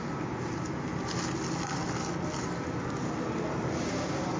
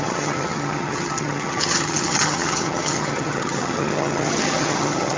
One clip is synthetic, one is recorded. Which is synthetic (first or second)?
second